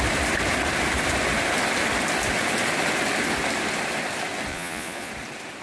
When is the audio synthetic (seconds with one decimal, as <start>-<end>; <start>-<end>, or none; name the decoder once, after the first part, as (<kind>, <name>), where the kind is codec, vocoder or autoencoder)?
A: 4.5-5.1 (vocoder, Vocos)